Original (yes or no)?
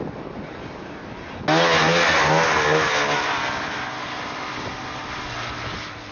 yes